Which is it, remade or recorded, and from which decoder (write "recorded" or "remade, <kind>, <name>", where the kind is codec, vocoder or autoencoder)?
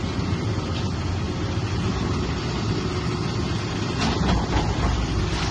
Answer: recorded